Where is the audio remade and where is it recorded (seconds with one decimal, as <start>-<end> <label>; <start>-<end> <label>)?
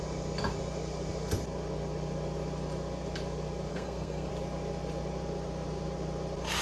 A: 0.0-3.7 recorded; 3.7-4.3 remade; 4.3-6.6 recorded